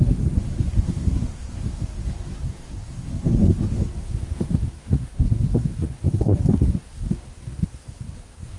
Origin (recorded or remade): remade